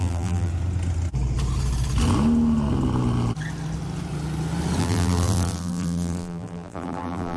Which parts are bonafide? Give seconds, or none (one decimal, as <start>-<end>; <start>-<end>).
0.5-4.8